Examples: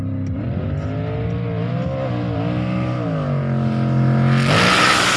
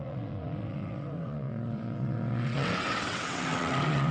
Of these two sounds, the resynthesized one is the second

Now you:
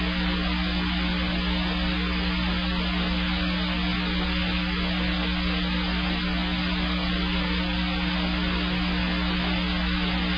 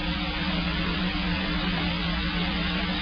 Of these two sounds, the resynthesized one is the second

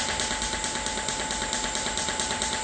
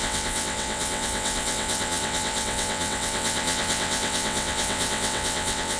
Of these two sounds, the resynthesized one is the second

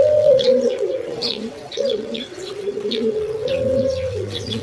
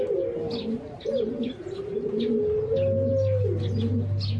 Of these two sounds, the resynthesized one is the first